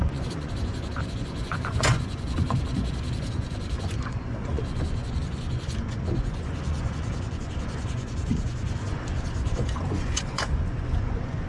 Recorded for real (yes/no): no